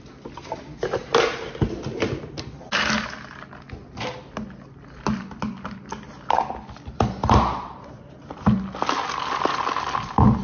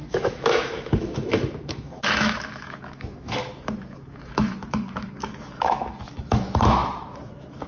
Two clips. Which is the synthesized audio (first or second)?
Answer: second